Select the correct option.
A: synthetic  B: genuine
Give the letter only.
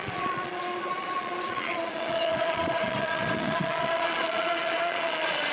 A